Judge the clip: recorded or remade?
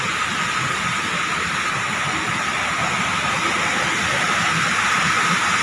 recorded